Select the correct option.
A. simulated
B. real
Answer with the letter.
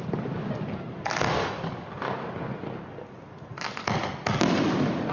B